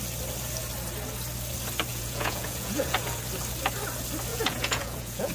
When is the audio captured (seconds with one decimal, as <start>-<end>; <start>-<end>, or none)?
0.0-1.9; 3.2-4.3